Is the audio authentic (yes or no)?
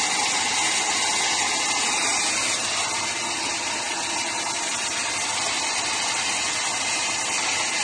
yes